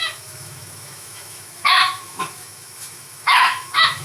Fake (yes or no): yes